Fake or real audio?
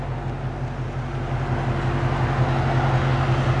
real